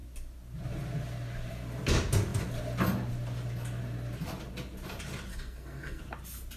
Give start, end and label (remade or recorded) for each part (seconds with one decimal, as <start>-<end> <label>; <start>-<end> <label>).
0.0-5.3 recorded; 5.3-6.0 remade; 6.0-6.6 recorded